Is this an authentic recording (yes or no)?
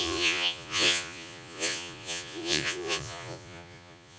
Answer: no